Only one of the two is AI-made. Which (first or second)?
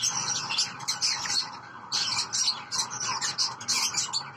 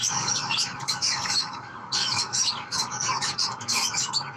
second